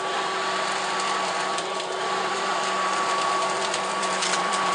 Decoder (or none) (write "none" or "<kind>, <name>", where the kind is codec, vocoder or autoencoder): vocoder, BigVGAN v2